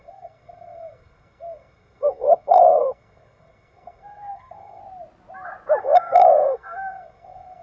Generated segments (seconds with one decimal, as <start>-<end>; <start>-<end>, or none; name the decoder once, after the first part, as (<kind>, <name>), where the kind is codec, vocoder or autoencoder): 0.0-4.8 (codec, SNAC); 5.8-7.6